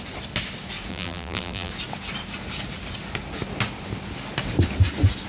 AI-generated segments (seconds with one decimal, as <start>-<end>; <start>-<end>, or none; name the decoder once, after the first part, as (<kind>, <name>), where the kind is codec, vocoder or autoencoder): 0.9-1.7 (vocoder, BigVGAN v2)